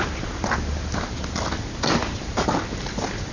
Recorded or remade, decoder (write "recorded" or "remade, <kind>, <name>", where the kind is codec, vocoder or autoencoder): recorded